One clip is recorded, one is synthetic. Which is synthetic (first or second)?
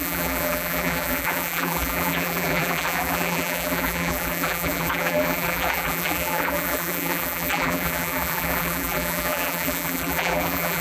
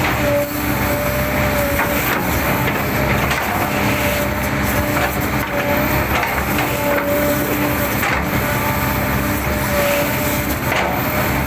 first